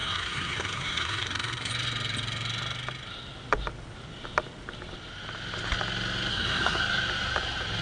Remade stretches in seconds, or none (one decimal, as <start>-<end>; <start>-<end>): 0.0-1.7; 6.3-6.8